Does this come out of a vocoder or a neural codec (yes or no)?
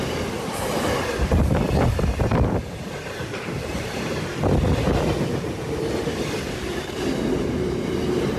no